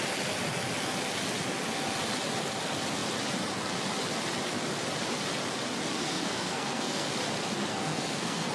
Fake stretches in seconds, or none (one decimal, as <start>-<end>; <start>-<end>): 6.0-7.1; 7.7-8.5